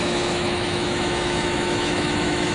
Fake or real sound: fake